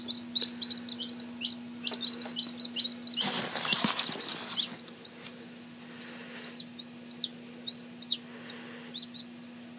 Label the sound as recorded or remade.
recorded